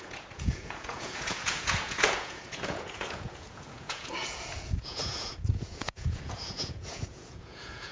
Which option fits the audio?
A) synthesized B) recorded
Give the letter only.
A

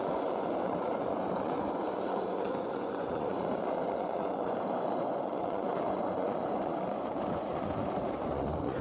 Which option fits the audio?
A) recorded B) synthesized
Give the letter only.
B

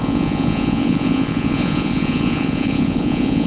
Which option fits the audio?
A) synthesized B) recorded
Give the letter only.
A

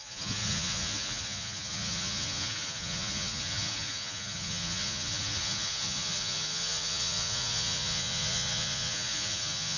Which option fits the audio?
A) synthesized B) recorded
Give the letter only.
A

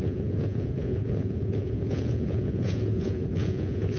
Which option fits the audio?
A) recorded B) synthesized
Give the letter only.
B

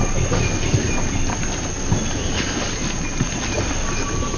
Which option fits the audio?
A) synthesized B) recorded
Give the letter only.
B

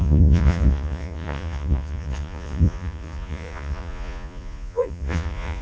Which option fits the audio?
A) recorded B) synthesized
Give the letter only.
B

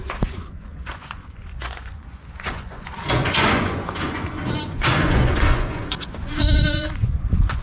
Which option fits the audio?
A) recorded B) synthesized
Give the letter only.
B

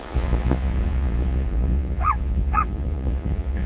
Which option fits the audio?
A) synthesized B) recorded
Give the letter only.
A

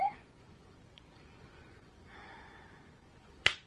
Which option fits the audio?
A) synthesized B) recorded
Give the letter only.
A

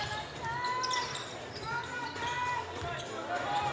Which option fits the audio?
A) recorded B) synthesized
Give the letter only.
A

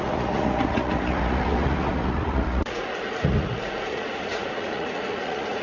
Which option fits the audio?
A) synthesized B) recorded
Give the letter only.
A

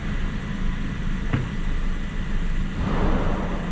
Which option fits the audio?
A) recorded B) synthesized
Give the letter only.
A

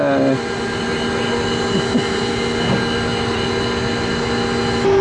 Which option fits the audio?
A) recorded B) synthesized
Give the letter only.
A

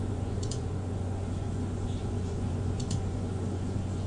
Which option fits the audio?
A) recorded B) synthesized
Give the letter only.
B